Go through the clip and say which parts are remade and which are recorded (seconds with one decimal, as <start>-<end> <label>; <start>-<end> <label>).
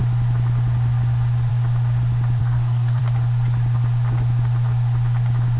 0.0-2.4 recorded; 2.4-3.0 remade; 3.0-5.6 recorded